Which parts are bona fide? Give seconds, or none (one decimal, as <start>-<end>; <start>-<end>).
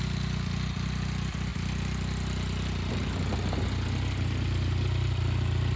0.0-5.8